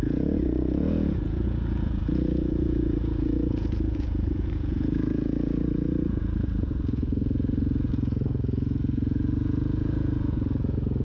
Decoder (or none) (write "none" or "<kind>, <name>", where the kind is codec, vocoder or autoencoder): vocoder, Vocos